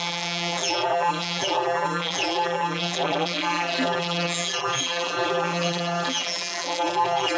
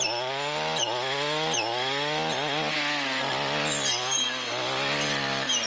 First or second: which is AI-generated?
first